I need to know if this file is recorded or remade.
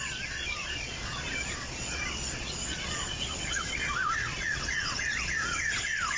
remade